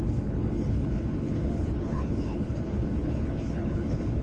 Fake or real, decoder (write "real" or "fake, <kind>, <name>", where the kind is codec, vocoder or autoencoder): fake, codec, HILCodec